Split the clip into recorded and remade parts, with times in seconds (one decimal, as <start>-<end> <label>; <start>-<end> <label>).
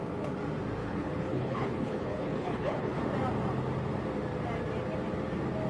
0.0-0.8 recorded; 0.8-3.0 remade; 3.0-5.7 recorded